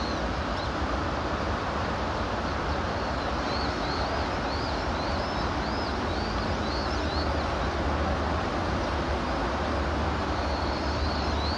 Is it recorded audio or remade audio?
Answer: recorded